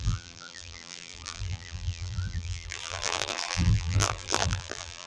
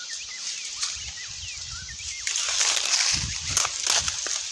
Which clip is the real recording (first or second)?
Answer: second